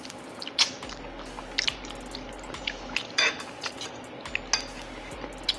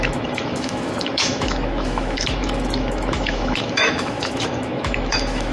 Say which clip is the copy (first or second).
second